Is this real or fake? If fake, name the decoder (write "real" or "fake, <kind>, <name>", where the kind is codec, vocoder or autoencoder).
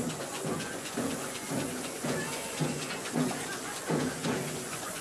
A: fake, vocoder, Vocos